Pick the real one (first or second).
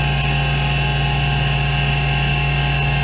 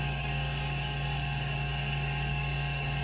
first